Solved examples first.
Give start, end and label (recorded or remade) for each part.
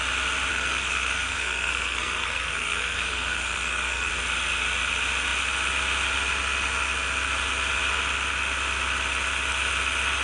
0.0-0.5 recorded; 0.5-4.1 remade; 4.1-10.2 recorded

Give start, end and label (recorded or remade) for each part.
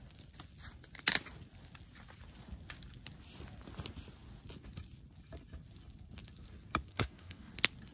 0.0-6.9 recorded; 6.9-7.5 remade; 7.5-7.9 recorded